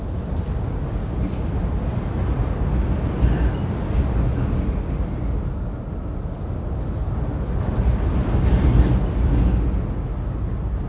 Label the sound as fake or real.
real